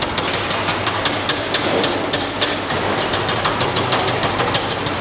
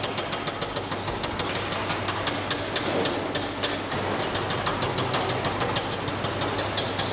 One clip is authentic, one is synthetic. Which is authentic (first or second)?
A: second